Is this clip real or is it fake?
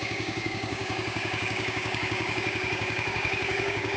fake